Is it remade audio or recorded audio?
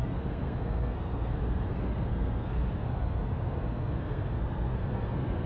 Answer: remade